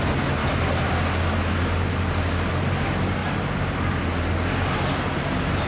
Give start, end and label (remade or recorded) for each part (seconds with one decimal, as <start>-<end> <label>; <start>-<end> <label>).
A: 0.0-5.7 recorded